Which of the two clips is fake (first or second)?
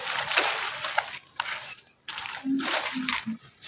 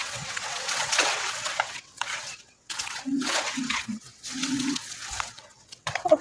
second